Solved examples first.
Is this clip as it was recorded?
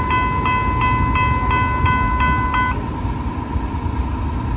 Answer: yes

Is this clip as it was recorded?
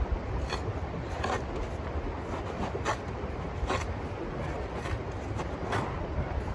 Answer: yes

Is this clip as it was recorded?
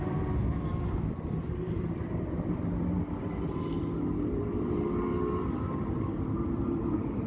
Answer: no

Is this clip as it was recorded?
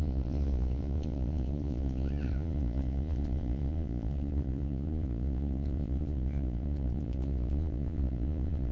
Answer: no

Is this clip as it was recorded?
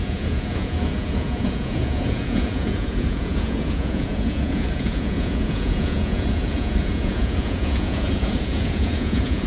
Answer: no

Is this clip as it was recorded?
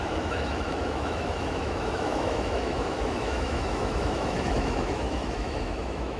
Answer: no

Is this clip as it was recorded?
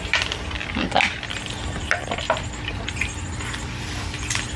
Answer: yes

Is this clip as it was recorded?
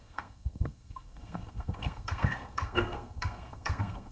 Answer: no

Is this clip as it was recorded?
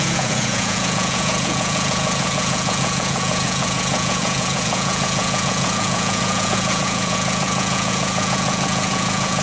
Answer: no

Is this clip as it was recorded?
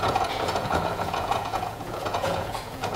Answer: no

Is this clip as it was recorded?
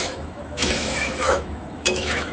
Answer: no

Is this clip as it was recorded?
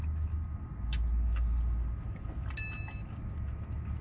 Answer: yes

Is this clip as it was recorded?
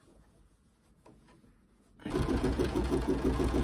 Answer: no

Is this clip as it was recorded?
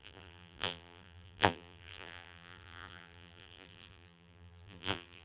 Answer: no